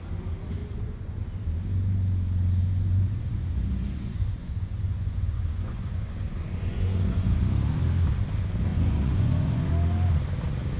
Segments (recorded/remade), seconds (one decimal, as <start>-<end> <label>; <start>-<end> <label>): 0.0-0.6 recorded; 0.6-1.2 remade; 1.2-2.6 recorded; 2.6-7.4 remade; 7.4-8.7 recorded; 8.7-9.7 remade; 9.7-10.8 recorded